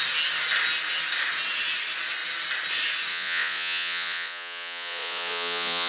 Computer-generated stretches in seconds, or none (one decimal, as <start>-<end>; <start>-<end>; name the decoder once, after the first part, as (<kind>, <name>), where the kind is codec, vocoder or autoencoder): 3.1-5.9 (vocoder, Vocos)